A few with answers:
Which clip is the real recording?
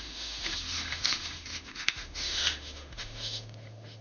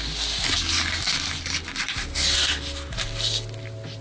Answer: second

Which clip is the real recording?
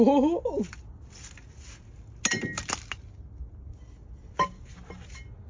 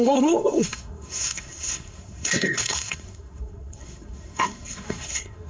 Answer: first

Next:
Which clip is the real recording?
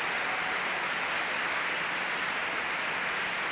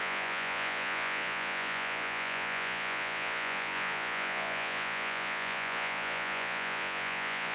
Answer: first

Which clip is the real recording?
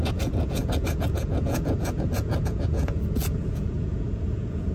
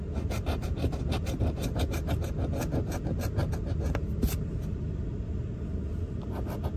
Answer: second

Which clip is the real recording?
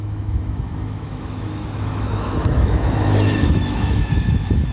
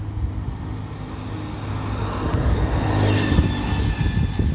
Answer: second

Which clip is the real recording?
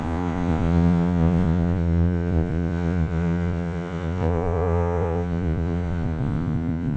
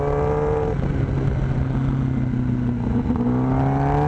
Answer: second